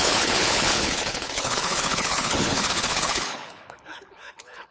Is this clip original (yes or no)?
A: no